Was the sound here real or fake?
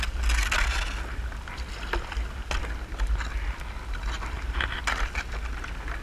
real